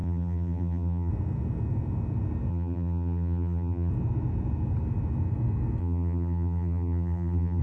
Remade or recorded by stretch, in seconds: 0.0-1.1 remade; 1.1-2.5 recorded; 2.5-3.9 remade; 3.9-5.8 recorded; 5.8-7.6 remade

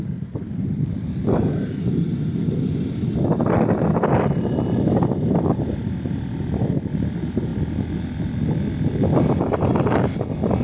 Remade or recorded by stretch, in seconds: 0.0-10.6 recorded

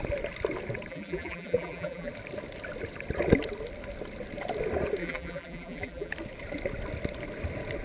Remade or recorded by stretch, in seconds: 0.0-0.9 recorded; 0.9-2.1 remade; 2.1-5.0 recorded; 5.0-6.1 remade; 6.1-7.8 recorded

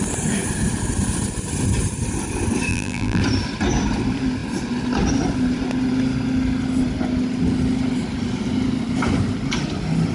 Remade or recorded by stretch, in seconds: 0.0-2.7 recorded; 2.7-3.2 remade; 3.2-10.1 recorded

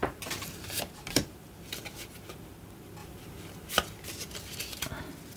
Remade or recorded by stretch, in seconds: 0.0-1.7 remade; 1.7-3.0 recorded; 3.0-3.7 remade; 3.7-5.4 recorded